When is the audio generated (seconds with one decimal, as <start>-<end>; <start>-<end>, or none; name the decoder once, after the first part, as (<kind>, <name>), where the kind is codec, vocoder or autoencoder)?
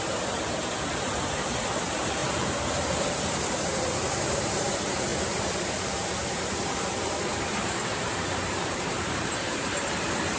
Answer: 0.0-10.4 (vocoder, BigVGAN v2)